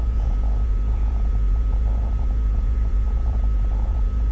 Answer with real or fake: fake